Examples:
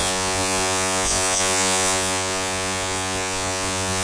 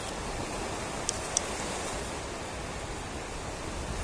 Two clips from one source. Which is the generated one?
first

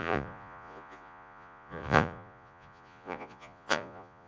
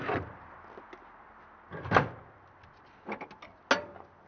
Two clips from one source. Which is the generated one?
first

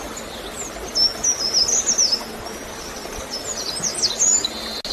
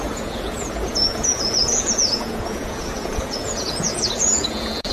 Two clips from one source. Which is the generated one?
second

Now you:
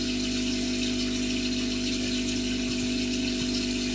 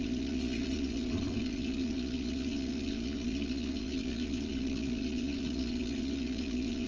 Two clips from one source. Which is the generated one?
second